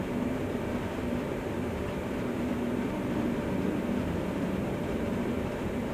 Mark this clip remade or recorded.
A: remade